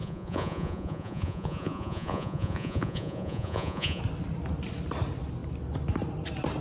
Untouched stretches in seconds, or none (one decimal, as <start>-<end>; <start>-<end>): 4.0-6.6